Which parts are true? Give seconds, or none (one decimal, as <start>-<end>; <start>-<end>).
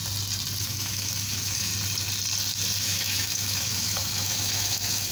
0.0-0.6; 1.7-2.8